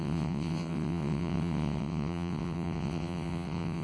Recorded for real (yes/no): no